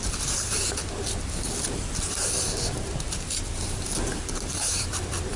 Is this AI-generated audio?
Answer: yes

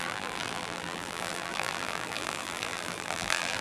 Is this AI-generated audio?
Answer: yes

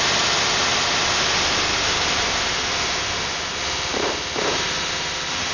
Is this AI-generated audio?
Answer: no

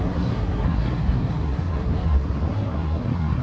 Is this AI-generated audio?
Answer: yes